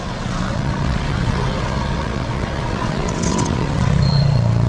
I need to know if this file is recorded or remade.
remade